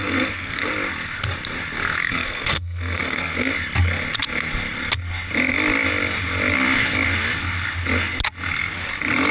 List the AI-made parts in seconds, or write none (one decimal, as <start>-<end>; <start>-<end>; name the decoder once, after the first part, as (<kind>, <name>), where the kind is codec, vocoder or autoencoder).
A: 0.0-0.7 (codec, SNAC); 2.0-3.5